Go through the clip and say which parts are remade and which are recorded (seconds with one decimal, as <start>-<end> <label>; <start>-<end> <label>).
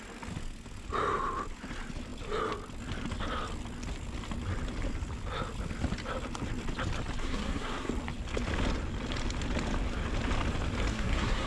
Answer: 0.0-7.2 recorded; 7.2-7.9 remade; 7.9-10.9 recorded; 10.9-11.5 remade